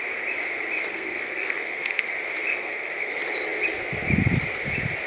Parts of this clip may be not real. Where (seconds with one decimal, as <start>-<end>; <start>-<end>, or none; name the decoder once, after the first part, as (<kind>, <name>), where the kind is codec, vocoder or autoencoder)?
0.9-2.0 (codec, SNAC); 2.5-3.1